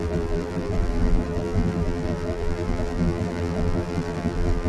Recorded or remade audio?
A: remade